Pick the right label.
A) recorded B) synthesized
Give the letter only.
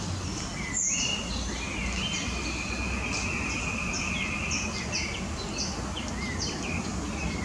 A